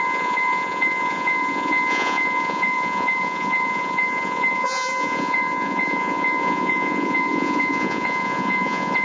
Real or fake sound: fake